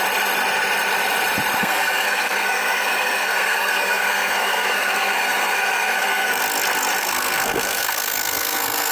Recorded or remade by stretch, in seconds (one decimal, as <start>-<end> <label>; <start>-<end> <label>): 0.0-1.6 recorded; 1.6-6.4 remade; 6.4-7.0 recorded; 7.0-8.9 remade